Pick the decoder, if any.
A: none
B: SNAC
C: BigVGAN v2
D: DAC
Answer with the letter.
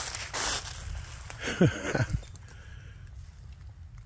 A